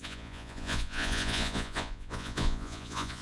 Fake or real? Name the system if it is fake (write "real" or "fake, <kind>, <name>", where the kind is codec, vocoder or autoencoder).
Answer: fake, vocoder, Vocos